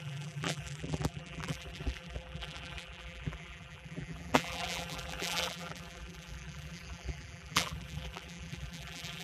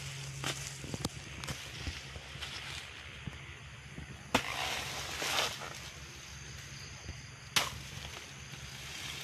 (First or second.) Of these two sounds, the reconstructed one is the first